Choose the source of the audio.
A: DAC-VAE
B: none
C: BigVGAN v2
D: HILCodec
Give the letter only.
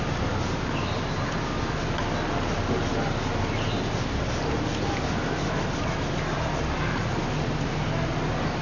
B